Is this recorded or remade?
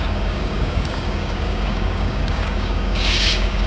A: remade